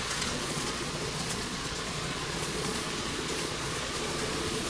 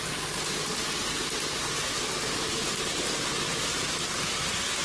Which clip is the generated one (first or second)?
first